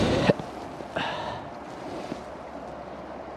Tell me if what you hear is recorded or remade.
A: recorded